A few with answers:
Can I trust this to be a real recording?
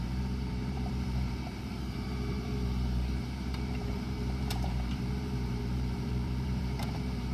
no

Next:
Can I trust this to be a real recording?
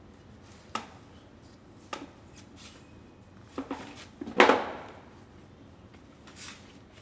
yes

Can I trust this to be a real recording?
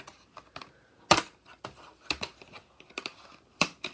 yes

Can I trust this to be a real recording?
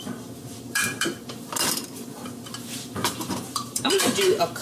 no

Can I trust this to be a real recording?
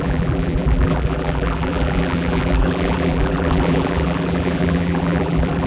no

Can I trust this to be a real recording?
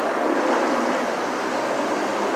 yes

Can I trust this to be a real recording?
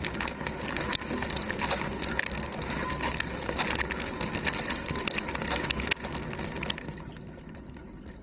yes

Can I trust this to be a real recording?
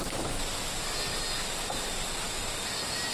yes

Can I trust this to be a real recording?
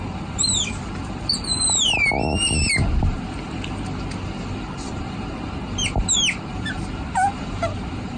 no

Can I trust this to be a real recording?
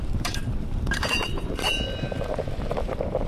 no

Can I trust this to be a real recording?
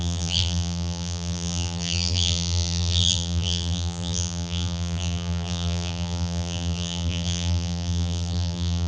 no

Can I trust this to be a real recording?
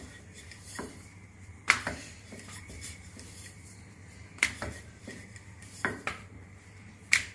no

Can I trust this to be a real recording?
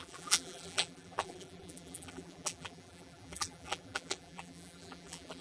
no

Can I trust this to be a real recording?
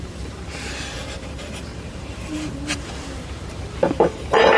no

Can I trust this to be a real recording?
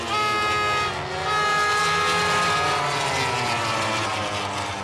yes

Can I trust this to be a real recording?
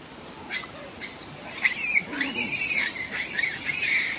no